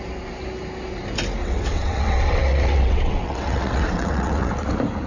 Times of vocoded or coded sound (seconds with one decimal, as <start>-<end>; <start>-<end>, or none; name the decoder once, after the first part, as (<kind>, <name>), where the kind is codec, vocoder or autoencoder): 1.4-4.5 (vocoder, WaveNeXt)